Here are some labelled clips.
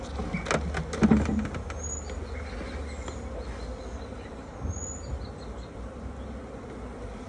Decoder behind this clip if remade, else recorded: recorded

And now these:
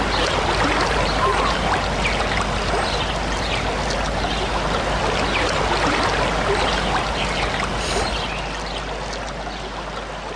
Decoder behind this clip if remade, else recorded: recorded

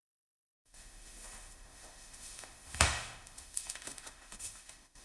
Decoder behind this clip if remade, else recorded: remade, autoencoder, DAC-VAE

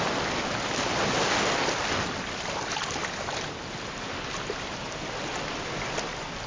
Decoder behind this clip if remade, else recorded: recorded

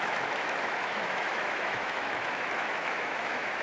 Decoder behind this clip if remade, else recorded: remade, autoencoder, DAC-VAE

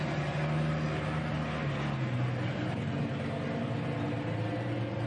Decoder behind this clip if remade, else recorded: recorded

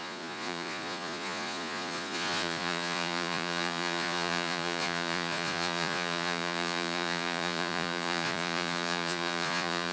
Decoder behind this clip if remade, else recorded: remade, vocoder, Vocos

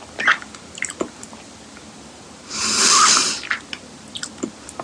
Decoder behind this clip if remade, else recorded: recorded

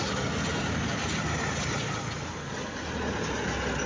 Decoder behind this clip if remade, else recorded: recorded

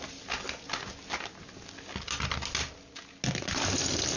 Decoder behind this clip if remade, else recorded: recorded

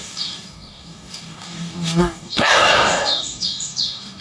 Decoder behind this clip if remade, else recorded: remade, codec, DAC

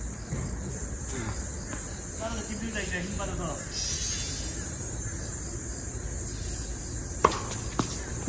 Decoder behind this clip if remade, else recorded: recorded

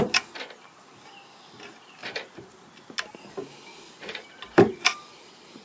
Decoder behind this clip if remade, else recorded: recorded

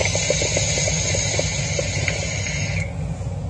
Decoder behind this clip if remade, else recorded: recorded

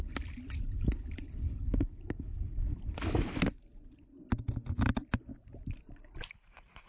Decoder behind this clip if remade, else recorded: recorded